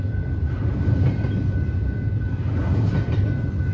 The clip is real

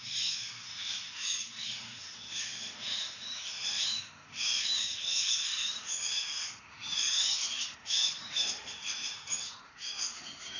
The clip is fake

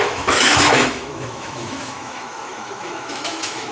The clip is fake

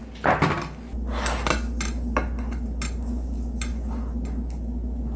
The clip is real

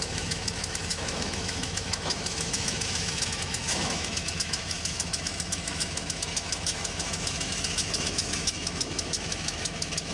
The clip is fake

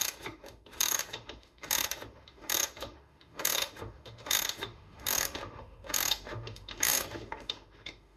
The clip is fake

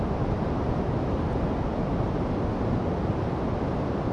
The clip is real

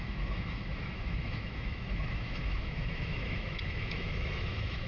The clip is fake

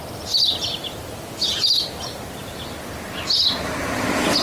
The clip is real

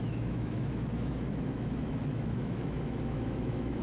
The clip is fake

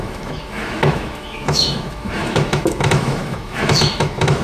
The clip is fake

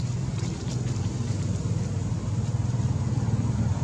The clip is real